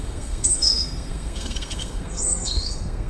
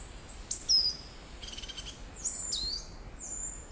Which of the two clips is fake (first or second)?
first